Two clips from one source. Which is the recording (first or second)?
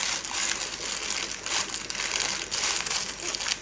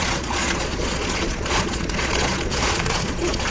first